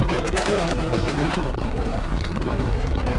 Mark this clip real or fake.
fake